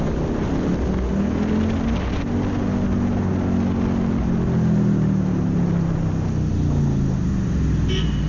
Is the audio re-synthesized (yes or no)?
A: no